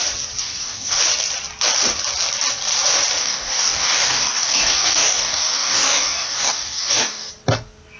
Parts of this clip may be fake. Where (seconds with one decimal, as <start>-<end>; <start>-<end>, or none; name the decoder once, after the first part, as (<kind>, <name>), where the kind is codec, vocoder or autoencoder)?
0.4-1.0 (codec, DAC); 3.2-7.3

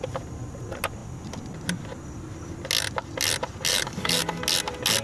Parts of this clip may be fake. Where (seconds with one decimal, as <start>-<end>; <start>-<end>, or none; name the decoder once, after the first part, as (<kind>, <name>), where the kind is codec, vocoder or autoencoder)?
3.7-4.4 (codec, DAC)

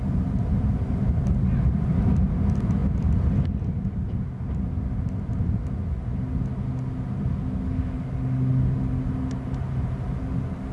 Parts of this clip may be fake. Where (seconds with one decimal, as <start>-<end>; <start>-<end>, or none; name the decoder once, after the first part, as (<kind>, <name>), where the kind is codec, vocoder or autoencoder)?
none